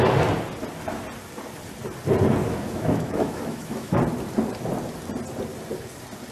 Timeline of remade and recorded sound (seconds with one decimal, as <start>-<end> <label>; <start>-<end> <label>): 0.0-2.4 recorded; 2.4-4.0 remade; 4.0-6.3 recorded